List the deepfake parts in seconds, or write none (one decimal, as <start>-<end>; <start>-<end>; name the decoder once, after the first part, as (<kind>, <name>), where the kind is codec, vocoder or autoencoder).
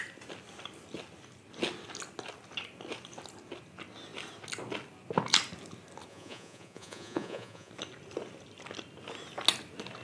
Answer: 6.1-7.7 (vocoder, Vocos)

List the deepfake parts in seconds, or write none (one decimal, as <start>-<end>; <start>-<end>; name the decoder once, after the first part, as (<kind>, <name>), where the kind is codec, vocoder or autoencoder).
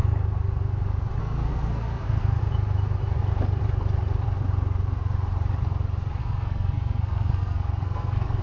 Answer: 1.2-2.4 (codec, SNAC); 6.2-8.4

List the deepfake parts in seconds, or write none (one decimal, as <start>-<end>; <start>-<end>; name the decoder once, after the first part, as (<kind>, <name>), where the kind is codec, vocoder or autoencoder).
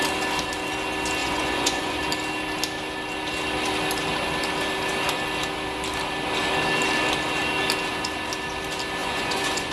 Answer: 1.2-2.0 (vocoder, Vocos); 9.0-9.7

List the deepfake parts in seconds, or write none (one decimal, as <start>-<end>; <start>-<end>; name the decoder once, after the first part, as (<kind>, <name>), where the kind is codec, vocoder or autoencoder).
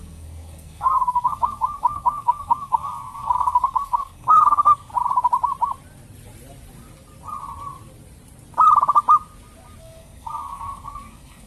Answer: 0.0-4.9 (codec, SNAC); 9.8-11.5